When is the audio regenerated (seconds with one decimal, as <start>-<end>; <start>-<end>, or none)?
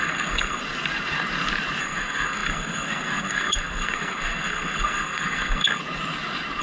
0.0-0.6; 1.8-5.8